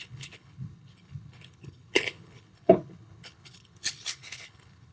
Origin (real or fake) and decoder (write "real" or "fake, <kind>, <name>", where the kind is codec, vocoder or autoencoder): fake, codec, HILCodec